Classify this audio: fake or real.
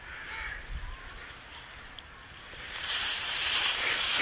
fake